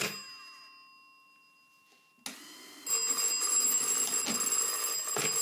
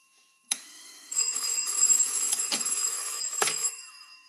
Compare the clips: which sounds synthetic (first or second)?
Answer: second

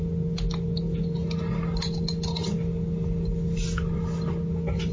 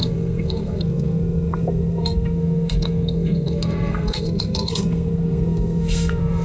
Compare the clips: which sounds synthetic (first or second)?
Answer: second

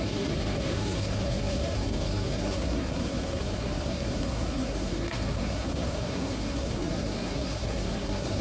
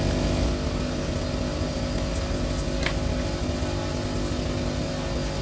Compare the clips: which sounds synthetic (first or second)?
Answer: first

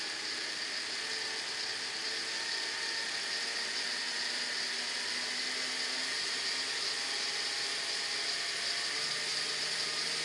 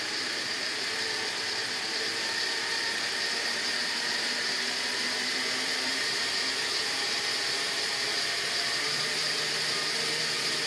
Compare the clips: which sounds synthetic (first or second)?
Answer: second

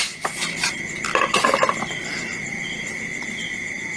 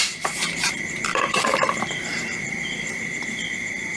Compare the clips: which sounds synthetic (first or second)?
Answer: second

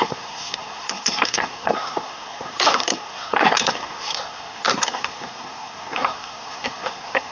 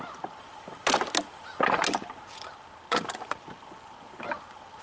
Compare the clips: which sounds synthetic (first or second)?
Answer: first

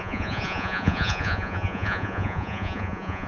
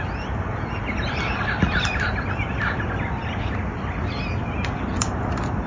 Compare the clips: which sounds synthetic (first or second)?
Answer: first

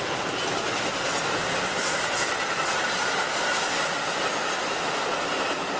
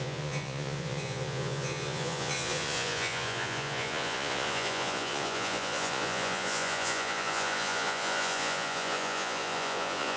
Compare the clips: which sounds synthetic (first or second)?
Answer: second